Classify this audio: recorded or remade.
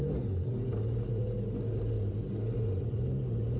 recorded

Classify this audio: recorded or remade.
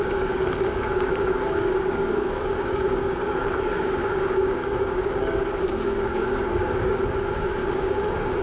remade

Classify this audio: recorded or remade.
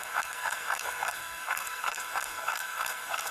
remade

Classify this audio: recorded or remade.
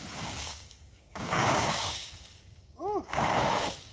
remade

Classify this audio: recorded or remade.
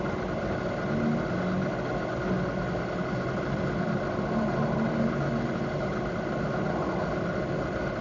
recorded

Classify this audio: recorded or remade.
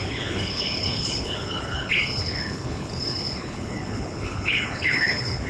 remade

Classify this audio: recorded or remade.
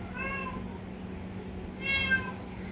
recorded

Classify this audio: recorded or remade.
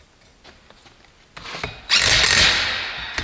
recorded